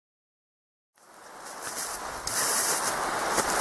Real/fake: real